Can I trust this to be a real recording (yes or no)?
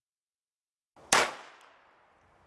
yes